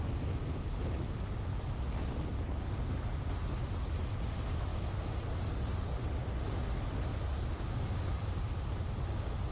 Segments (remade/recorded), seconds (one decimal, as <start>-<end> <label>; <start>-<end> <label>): 0.0-9.5 recorded